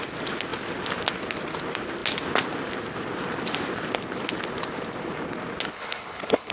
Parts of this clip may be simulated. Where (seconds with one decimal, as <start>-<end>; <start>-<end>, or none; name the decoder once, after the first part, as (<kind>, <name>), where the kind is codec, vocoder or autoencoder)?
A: 5.7-6.5 (codec, HILCodec)